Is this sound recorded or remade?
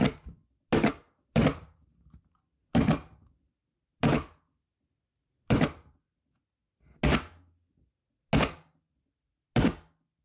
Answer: recorded